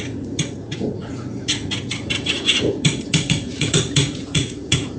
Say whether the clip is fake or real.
fake